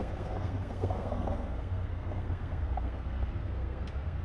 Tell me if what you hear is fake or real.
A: fake